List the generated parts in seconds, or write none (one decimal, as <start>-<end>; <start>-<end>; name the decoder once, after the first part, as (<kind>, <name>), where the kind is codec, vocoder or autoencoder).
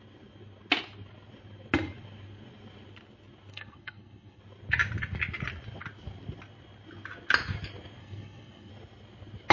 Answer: 3.5-4.4 (codec, SNAC); 8.0-8.7